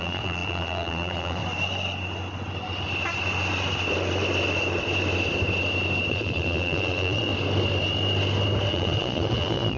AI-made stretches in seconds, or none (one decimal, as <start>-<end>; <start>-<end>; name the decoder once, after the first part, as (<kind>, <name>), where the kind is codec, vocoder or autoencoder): 0.0-1.4 (vocoder, Vocos); 6.1-7.3; 8.7-9.8